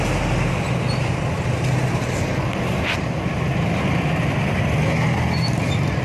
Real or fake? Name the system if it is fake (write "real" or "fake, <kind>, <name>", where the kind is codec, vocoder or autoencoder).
real